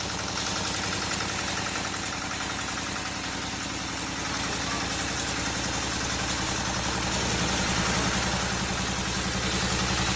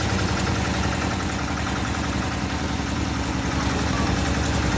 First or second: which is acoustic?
first